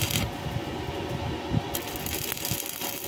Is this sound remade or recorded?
recorded